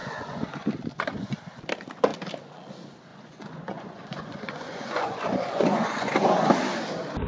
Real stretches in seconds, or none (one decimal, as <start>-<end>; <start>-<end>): 0.5-0.9; 1.4-3.1; 6.6-7.3